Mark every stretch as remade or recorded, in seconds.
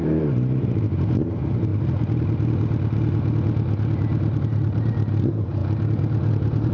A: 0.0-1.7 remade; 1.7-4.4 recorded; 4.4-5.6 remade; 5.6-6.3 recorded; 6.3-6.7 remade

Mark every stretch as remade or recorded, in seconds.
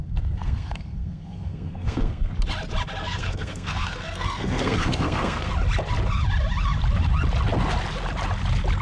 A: 0.0-2.3 remade; 2.3-3.0 recorded; 3.0-5.5 remade; 5.5-8.8 recorded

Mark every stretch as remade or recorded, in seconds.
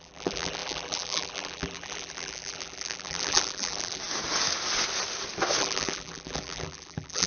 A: 0.0-4.0 remade; 4.0-5.6 recorded; 5.6-7.3 remade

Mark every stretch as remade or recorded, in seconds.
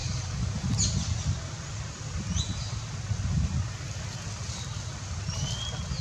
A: 0.0-6.0 recorded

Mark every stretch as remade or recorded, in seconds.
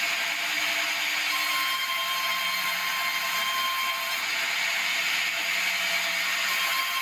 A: 0.0-7.0 recorded